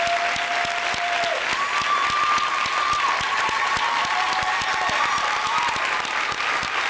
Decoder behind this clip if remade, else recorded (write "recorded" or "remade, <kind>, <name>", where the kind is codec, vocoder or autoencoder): recorded